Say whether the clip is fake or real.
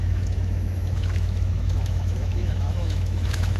fake